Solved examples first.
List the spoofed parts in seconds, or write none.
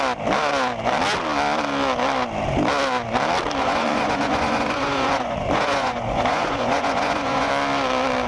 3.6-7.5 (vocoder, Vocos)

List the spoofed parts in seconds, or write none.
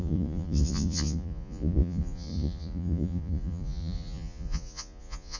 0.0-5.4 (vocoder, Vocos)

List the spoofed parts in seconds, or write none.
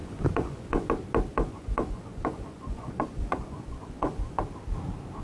0.0-0.9 (vocoder, Vocos); 1.3-4.4